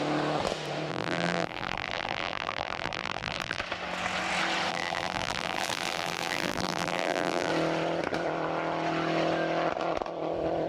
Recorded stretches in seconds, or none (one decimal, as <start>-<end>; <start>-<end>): 0.0-0.9; 3.6-4.7; 7.5-10.7